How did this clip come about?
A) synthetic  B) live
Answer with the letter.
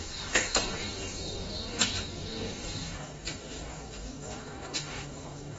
A